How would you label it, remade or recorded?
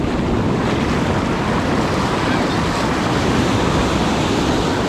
recorded